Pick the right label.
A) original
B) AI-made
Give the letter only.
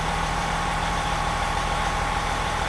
B